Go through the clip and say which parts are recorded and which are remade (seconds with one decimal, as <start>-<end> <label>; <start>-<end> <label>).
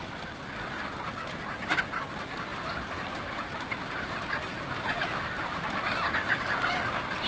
0.0-7.3 recorded